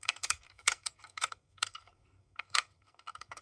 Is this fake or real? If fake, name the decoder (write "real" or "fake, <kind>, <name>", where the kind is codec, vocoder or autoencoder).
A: fake, codec, SNAC